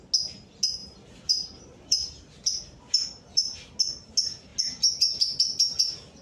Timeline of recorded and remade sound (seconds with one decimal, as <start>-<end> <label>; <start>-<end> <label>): 0.0-0.8 recorded; 0.8-3.8 remade; 3.8-6.2 recorded

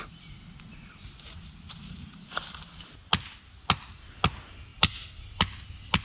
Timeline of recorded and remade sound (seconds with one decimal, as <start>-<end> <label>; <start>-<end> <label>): 0.0-6.0 recorded